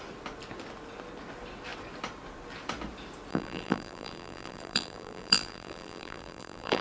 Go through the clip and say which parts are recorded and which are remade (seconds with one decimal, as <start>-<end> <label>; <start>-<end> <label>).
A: 0.0-3.3 recorded; 3.3-6.8 remade